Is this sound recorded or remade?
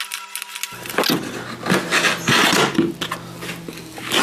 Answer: recorded